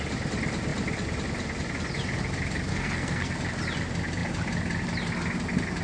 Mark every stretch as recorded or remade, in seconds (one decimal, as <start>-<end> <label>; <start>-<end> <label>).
0.0-2.7 recorded; 2.7-3.3 remade; 3.3-5.8 recorded